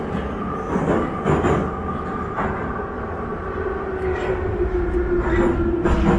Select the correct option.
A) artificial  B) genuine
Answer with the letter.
B